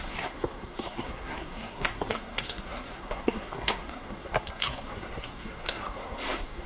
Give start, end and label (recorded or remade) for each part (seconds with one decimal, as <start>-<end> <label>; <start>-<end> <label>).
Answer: 0.0-6.7 remade